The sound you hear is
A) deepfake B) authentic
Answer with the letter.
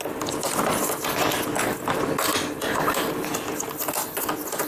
B